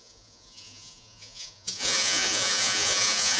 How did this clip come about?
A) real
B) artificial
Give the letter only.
B